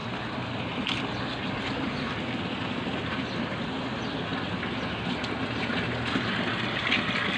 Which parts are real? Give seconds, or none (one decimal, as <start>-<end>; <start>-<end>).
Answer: 0.0-7.4